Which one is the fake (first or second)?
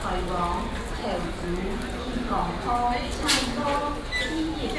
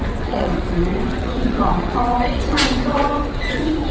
second